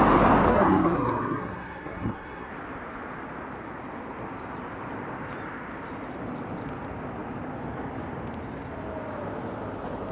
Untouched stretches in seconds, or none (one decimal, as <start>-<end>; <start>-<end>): 0.0-0.5; 2.5-10.1